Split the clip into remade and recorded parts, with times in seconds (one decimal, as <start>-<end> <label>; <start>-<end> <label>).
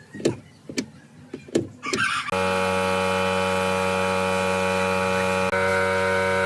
0.0-6.5 recorded